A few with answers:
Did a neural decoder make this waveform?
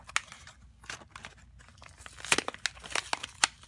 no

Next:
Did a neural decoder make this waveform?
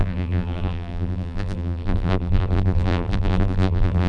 yes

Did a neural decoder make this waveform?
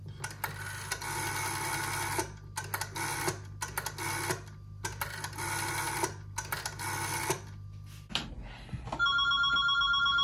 no